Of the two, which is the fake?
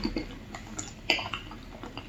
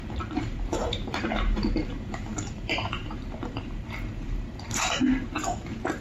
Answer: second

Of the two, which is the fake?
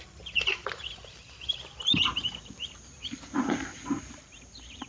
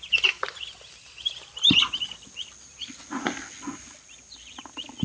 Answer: first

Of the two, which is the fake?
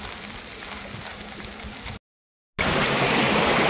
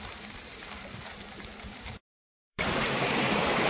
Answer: second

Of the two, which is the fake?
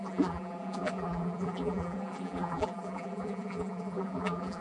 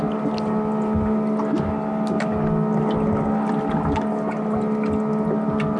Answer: first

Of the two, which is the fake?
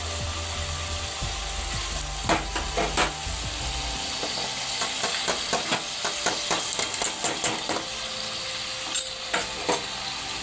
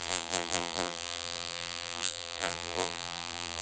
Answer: second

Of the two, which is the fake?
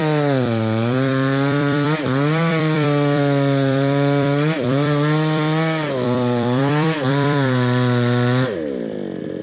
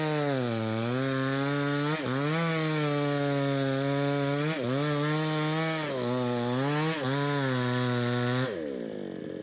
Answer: first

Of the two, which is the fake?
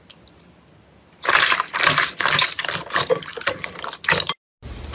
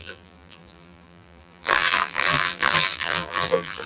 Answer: second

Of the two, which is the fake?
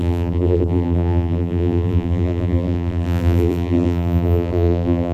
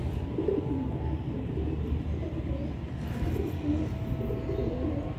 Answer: first